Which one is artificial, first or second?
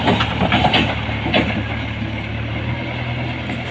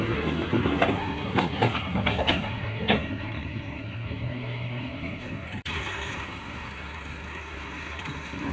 second